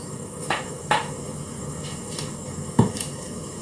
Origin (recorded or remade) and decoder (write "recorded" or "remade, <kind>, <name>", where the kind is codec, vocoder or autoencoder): remade, autoencoder, DAC-VAE